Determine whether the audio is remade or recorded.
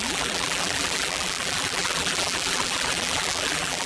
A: remade